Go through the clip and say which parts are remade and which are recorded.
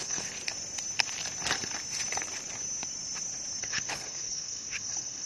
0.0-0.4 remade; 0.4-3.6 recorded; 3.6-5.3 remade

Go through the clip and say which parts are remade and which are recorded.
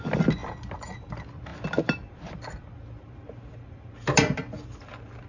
0.0-5.3 recorded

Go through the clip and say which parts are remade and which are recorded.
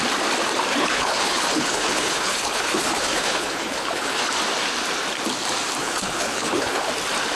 0.0-0.7 recorded; 0.7-4.2 remade; 4.2-5.8 recorded; 5.8-6.9 remade; 6.9-7.4 recorded